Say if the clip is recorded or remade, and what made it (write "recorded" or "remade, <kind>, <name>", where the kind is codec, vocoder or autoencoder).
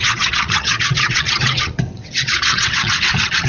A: remade, vocoder, WaveNeXt